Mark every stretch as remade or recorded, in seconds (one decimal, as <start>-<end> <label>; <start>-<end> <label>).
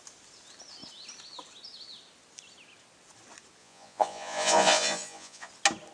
0.0-3.6 recorded; 3.6-5.5 remade; 5.5-5.9 recorded